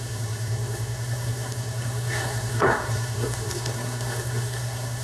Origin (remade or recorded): remade